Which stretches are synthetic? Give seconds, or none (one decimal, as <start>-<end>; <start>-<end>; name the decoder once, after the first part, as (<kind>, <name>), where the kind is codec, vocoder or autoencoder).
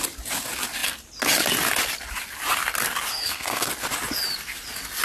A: 3.1-3.7 (codec, SNAC)